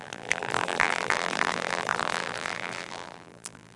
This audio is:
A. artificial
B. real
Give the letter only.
A